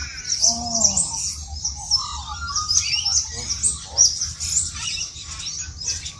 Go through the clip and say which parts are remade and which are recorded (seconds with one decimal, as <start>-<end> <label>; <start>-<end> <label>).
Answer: 0.0-6.2 recorded